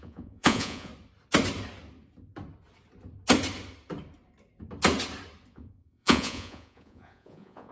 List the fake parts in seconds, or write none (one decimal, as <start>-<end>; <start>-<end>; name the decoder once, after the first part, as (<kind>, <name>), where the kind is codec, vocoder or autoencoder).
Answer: 0.0-0.9 (vocoder, Vocos); 5.5-7.7